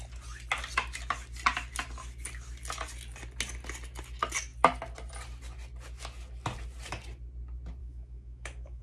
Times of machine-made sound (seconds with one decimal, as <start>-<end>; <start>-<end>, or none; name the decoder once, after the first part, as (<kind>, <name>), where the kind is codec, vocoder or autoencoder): 7.8-8.8 (autoencoder, DAC-VAE)